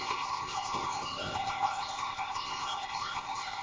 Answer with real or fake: fake